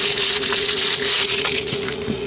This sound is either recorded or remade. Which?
remade